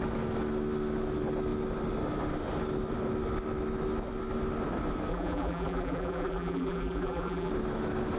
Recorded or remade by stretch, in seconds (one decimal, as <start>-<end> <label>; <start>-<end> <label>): 0.0-5.1 recorded; 5.1-7.5 remade; 7.5-8.2 recorded